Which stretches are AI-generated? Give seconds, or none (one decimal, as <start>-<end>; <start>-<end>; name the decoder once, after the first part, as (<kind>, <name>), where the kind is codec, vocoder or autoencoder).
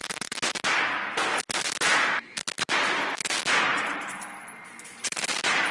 0.0-0.8 (vocoder, BigVGAN v2); 3.7-5.7